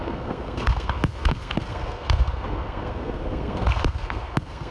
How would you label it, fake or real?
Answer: fake